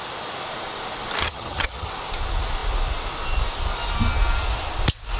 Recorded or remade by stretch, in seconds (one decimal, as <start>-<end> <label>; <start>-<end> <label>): 0.0-1.2 recorded; 1.2-1.9 remade; 1.9-5.2 recorded